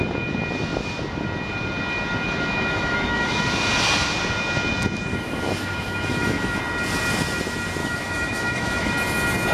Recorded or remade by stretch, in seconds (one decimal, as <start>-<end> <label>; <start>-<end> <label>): 0.0-2.5 recorded; 2.5-3.4 remade; 3.4-5.1 recorded; 5.1-6.6 remade; 6.6-7.8 recorded; 7.8-8.9 remade; 8.9-9.5 recorded